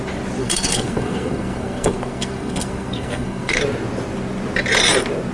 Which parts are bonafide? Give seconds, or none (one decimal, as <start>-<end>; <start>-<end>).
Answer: 0.0-0.4; 3.6-5.3